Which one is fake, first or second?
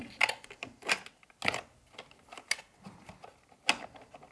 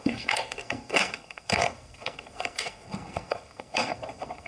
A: second